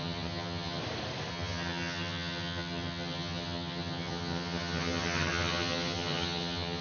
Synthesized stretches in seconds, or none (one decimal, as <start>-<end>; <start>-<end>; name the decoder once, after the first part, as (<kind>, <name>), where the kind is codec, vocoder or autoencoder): 0.0-0.8 (vocoder, HiFi-GAN); 1.3-6.8